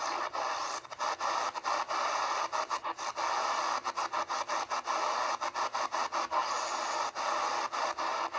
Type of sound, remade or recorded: recorded